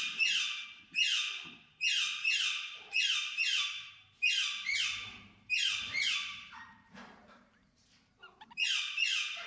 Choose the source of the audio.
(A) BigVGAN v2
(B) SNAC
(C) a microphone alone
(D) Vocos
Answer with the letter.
A